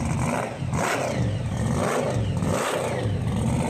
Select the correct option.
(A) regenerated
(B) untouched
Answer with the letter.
B